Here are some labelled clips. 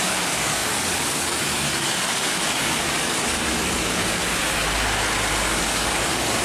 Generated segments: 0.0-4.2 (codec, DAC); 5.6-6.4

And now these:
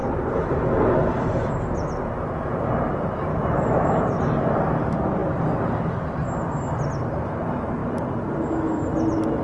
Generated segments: 3.3-4.0 (autoencoder, DAC-VAE)